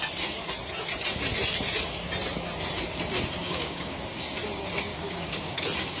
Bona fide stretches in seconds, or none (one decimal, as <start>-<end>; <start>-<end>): 0.0-3.4; 4.0-4.9; 5.6-6.0